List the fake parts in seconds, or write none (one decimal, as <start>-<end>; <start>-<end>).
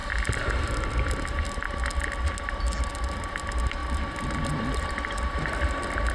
0.0-1.1